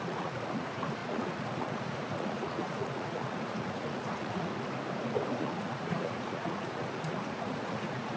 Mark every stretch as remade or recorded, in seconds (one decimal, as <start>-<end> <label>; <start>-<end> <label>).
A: 0.0-4.5 remade; 4.5-5.4 recorded; 5.4-8.2 remade